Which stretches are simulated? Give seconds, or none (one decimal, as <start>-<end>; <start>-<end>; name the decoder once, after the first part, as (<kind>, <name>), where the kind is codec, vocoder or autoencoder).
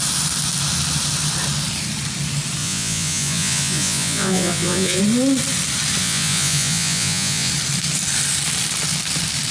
2.6-5.0 (vocoder, Vocos); 6.0-7.5